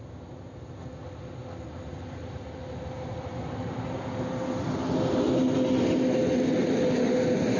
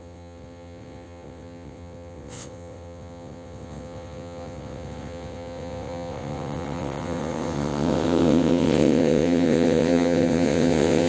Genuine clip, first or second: first